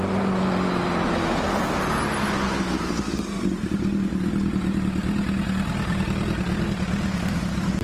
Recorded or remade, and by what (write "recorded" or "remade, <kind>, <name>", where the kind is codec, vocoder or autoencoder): recorded